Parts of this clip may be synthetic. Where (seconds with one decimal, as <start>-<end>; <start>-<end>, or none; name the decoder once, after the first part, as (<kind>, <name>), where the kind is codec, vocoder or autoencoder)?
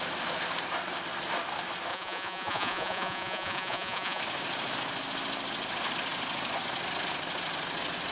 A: 1.9-4.2 (vocoder, Vocos)